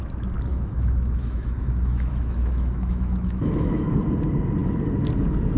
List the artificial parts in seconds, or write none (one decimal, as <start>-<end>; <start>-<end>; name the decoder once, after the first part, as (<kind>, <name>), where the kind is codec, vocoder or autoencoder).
0.5-3.9 (autoencoder, DAC-VAE)